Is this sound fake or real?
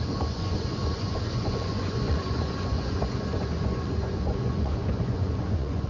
fake